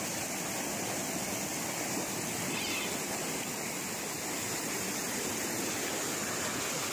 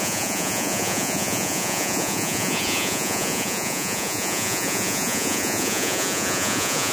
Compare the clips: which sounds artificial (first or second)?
second